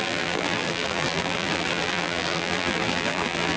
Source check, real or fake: fake